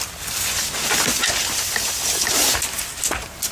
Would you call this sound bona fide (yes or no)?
yes